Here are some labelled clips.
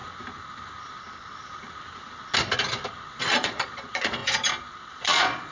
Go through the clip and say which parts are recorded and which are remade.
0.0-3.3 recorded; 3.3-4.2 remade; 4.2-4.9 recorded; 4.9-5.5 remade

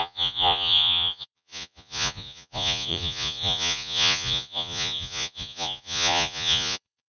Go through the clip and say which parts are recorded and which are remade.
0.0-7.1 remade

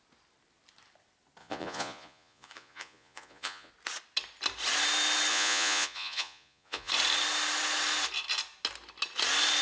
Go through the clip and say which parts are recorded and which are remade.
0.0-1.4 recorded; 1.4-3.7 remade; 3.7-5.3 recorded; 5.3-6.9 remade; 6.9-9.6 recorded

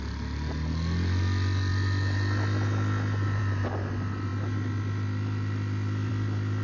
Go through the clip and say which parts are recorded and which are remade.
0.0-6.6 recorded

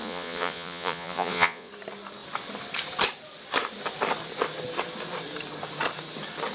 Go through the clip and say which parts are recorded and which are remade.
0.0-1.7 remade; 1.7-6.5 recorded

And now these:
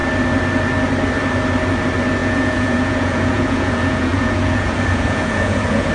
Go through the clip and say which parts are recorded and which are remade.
0.0-2.2 recorded; 2.2-5.9 remade

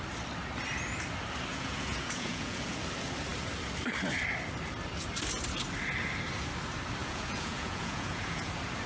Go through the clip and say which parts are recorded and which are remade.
0.0-1.5 recorded; 1.5-2.8 remade; 2.8-7.0 recorded; 7.0-8.5 remade; 8.5-8.9 recorded

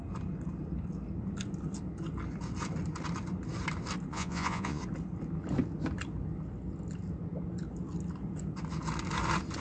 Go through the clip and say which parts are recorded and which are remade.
0.0-4.1 recorded; 4.1-4.8 remade; 4.8-9.6 recorded